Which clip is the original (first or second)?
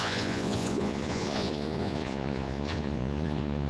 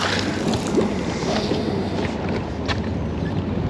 second